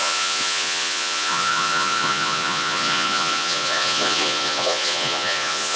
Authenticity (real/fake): fake